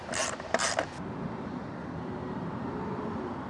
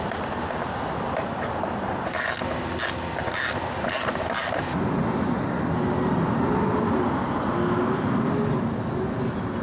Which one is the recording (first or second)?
second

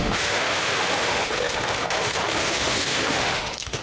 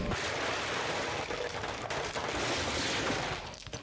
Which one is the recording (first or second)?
second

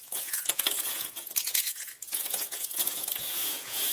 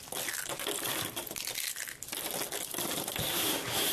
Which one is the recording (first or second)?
second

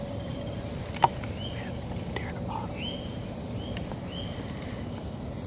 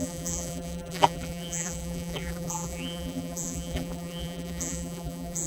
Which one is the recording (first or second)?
first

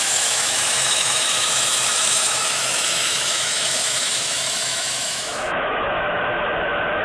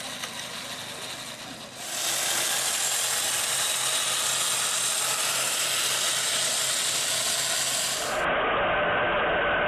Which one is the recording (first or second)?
second